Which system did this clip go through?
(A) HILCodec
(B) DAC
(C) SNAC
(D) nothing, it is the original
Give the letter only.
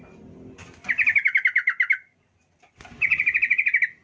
D